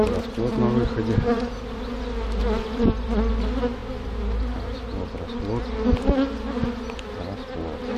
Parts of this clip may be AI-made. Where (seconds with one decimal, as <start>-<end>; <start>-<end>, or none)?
2.4-3.3; 3.8-5.4